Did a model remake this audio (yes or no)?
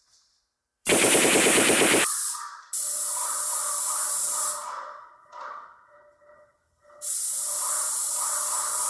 yes